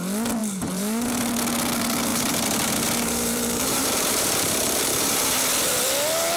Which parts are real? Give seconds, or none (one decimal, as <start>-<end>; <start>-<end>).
0.0-0.4; 1.2-2.1; 5.4-6.4